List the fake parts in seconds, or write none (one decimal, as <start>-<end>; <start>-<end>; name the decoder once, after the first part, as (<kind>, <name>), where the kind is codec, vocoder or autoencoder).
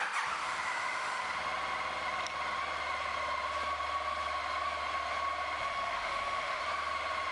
0.7-1.2 (autoencoder, DAC-VAE); 5.6-6.6